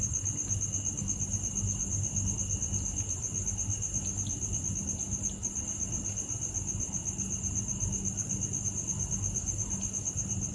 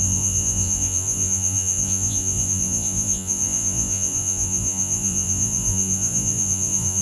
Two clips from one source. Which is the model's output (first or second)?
second